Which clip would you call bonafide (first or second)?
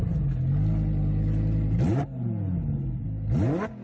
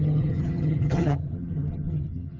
first